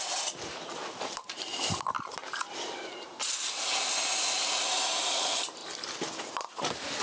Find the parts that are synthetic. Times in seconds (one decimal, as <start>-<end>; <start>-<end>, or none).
none